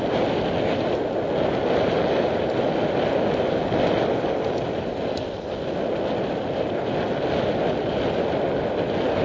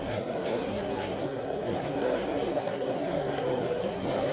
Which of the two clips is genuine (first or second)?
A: first